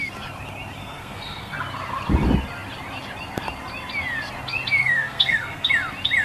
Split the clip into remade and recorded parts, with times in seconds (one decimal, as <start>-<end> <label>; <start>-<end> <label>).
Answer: 0.0-0.8 recorded; 0.8-1.5 remade; 1.5-4.8 recorded; 4.8-5.7 remade; 5.7-6.2 recorded